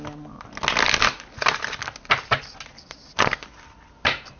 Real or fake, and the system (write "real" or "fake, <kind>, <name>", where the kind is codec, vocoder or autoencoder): real